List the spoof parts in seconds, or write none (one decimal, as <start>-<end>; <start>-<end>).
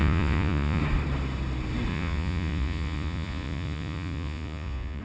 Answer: 0.0-0.8; 1.9-5.0